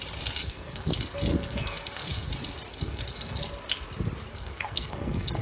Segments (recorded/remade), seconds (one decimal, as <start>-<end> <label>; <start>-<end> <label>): 0.0-0.4 recorded; 0.4-0.9 remade; 0.9-1.3 recorded; 1.3-2.3 remade; 2.3-2.7 recorded; 2.7-3.4 remade; 3.4-4.3 recorded; 4.3-5.4 remade